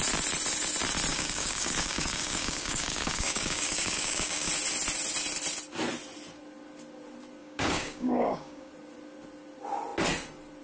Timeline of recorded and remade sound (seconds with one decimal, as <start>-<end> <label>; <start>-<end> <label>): 0.0-1.1 recorded; 1.1-4.5 remade; 4.5-7.4 recorded; 7.4-8.7 remade; 8.7-10.6 recorded